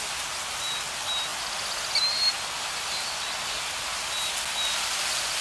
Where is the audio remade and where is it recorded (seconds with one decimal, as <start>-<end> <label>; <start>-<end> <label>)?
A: 0.0-5.4 recorded